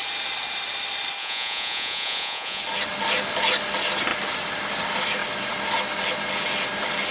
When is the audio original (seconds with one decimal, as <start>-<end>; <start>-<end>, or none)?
0.0-1.2; 2.6-7.1